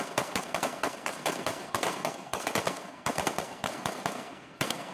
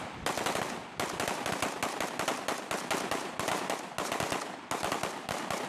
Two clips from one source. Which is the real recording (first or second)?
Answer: second